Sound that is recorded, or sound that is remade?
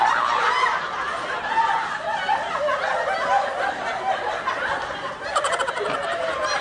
recorded